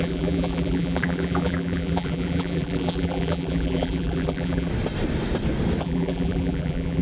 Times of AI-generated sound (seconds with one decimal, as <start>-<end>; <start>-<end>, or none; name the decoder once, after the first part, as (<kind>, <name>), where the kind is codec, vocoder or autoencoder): 0.0-4.7 (vocoder, BigVGAN v2); 5.8-7.0